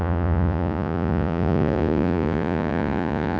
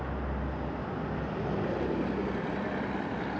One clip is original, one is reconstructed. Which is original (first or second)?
second